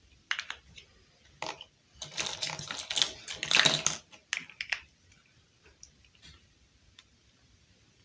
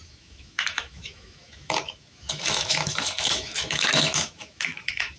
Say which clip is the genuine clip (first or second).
first